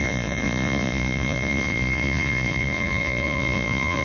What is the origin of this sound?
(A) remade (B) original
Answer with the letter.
A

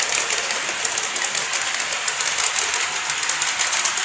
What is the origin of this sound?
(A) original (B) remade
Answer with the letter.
A